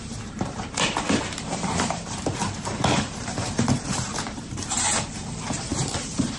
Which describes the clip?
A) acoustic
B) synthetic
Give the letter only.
B